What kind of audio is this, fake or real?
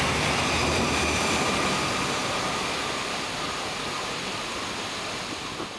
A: real